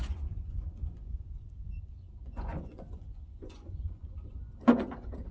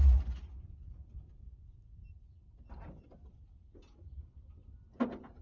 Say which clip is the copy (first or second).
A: first